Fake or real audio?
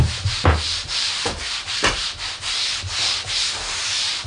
fake